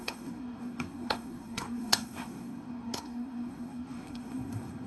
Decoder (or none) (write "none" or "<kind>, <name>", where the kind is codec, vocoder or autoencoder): codec, SNAC